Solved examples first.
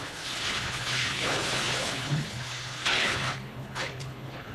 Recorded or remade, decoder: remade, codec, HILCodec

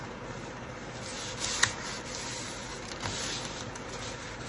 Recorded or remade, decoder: recorded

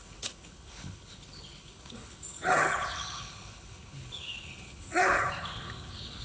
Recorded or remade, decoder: remade, codec, HILCodec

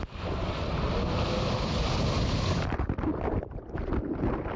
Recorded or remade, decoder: recorded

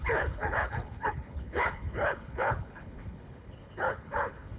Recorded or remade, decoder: remade, codec, HILCodec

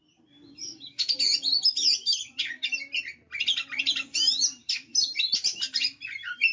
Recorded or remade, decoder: recorded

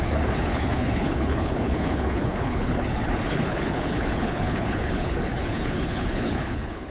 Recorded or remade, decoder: remade, codec, HILCodec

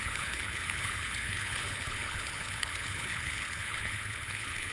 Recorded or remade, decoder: remade, codec, HILCodec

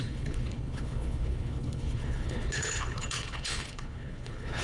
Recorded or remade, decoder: remade, codec, HILCodec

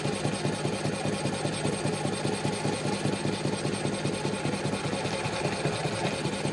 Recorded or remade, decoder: recorded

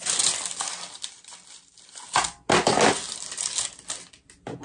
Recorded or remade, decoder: recorded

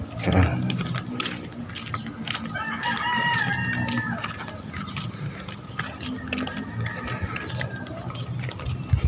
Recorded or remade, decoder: recorded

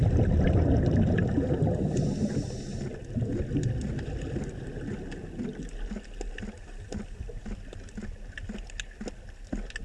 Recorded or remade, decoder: recorded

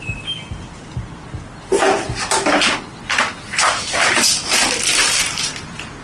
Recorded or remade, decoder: recorded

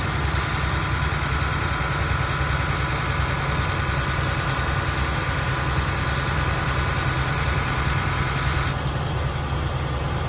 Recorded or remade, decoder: recorded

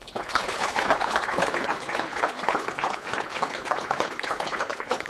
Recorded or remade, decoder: remade, codec, HILCodec